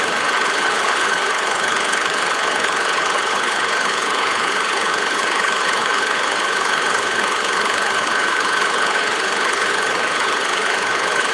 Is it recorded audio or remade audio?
remade